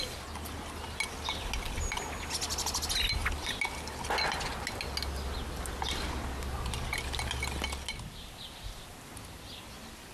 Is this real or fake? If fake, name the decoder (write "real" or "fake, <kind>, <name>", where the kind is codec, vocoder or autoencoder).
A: real